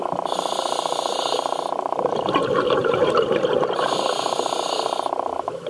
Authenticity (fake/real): real